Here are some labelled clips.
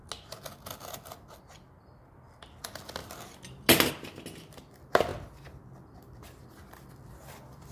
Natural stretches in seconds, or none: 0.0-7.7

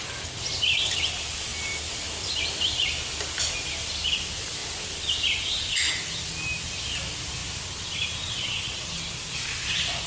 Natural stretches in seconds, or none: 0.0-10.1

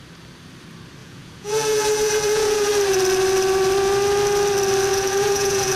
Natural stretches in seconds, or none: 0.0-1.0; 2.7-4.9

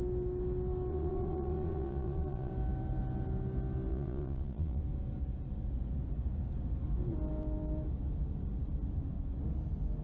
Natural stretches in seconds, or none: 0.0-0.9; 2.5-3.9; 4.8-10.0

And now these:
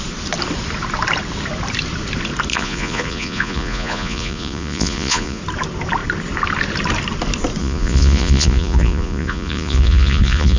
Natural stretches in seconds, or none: 0.0-2.5; 5.4-7.6

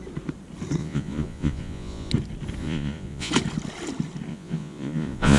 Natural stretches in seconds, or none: 0.0-0.8; 2.1-2.6; 3.3-4.3

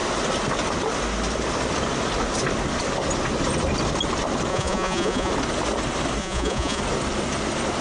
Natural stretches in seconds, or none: 0.0-4.5; 5.3-6.2; 6.8-7.8

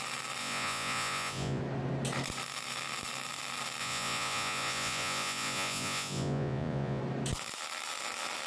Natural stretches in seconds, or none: 0.0-0.4; 1.6-3.8; 7.0-8.5